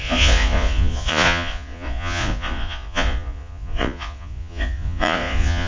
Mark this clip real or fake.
fake